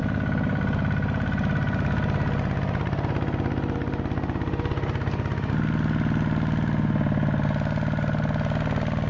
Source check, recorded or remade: recorded